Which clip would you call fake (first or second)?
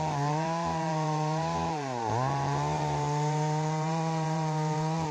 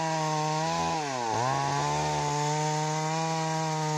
first